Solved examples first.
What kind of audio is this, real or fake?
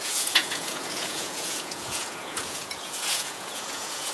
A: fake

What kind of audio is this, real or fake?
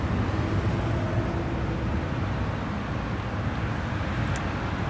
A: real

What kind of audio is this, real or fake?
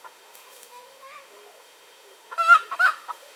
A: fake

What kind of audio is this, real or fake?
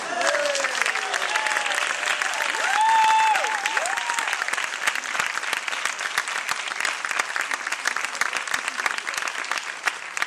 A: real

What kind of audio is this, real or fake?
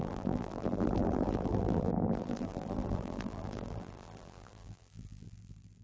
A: fake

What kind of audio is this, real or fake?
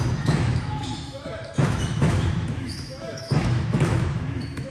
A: fake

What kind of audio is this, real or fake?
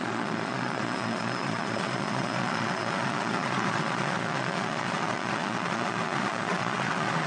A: fake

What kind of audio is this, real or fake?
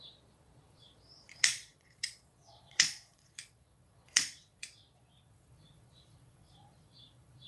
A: fake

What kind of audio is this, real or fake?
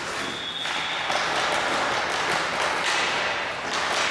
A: real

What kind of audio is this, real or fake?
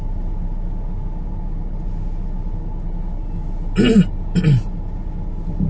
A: real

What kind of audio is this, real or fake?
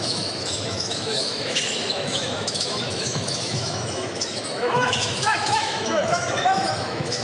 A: fake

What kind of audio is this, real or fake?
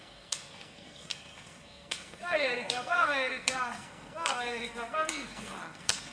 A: fake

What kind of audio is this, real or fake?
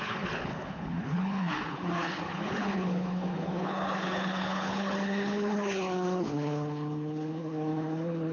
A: fake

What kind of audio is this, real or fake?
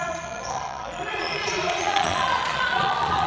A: fake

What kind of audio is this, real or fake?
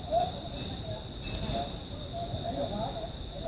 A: real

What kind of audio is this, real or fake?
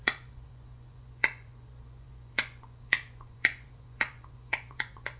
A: fake